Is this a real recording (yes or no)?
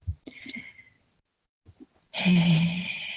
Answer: yes